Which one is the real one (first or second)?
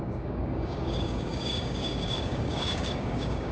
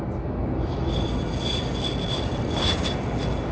second